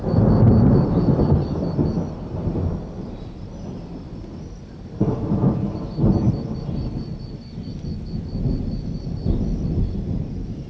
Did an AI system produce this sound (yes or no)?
no